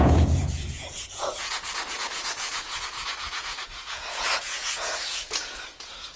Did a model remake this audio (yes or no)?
yes